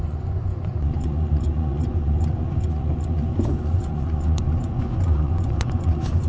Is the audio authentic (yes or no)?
no